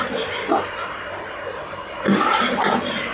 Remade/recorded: recorded